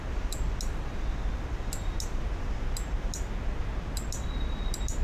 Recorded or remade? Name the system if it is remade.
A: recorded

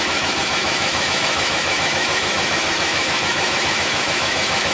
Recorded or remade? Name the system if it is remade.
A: remade, autoencoder, DAC-VAE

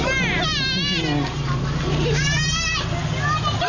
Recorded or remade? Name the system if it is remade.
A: recorded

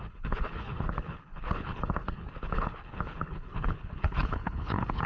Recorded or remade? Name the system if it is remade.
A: remade, codec, HILCodec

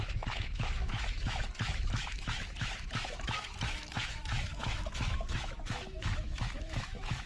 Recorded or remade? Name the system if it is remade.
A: remade, autoencoder, DAC-VAE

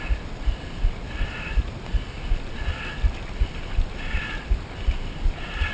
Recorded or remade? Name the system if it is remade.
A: recorded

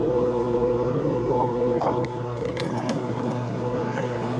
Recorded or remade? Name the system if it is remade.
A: remade, codec, SNAC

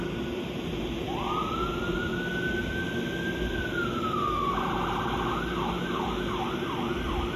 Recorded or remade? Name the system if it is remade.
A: recorded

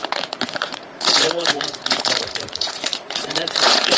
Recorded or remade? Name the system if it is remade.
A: remade, vocoder, Vocos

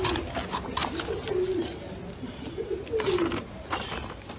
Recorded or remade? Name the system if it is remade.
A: recorded